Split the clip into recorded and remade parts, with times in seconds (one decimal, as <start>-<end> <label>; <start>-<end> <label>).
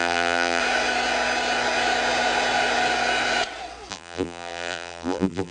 0.0-0.6 remade; 0.6-3.9 recorded; 3.9-5.5 remade